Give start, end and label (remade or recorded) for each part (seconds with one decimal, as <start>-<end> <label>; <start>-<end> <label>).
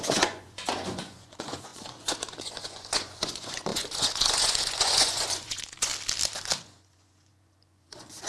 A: 0.0-5.9 remade; 5.9-6.6 recorded; 6.6-8.3 remade